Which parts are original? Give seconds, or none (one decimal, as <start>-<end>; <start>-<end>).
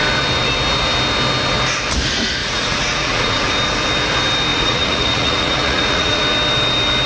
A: 0.0-2.4; 3.5-4.5; 6.2-7.1